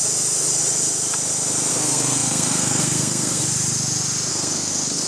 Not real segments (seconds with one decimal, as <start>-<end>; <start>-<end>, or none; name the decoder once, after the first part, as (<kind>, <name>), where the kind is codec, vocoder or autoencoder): 1.7-3.4 (codec, SNAC); 4.3-5.1